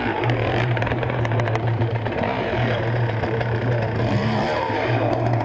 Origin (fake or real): fake